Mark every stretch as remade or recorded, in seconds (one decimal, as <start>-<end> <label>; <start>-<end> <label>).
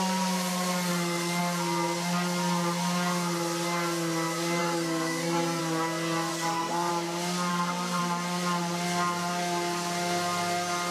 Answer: 0.0-0.9 recorded; 0.9-1.4 remade; 1.4-4.6 recorded; 4.6-5.6 remade; 5.6-6.3 recorded; 6.3-6.9 remade; 6.9-7.5 recorded; 7.5-8.0 remade; 8.0-10.9 recorded